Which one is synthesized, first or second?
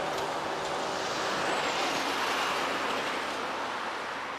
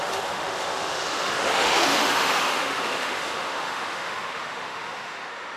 second